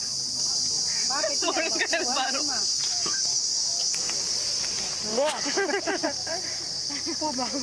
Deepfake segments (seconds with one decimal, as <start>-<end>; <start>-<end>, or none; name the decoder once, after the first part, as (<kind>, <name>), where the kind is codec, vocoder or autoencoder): 2.7-3.8 (autoencoder, DAC-VAE); 5.1-6.0